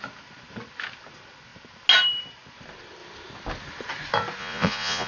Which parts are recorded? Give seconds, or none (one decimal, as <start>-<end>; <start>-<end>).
0.0-4.4